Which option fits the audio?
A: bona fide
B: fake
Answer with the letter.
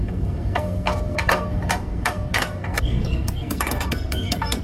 B